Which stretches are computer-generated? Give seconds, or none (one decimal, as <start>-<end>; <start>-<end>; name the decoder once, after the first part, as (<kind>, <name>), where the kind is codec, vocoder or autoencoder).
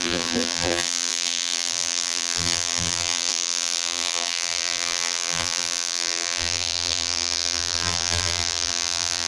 0.0-9.3 (vocoder, BigVGAN v2)